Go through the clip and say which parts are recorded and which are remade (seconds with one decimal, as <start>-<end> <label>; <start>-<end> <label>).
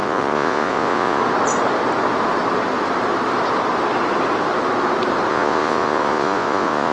0.0-1.2 remade; 1.2-5.3 recorded; 5.3-6.9 remade